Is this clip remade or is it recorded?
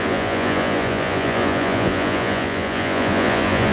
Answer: remade